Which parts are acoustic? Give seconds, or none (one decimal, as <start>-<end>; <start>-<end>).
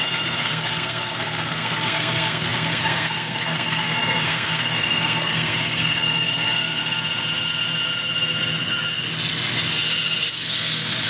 6.8-10.3